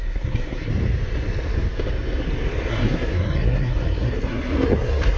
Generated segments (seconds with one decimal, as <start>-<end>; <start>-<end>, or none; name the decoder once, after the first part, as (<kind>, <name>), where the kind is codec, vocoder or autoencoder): 0.0-0.7 (codec, SNAC); 2.7-5.2